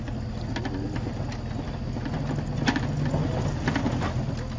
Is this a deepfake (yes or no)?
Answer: no